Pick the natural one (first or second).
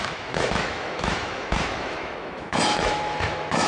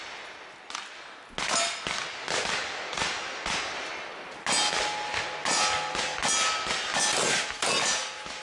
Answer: second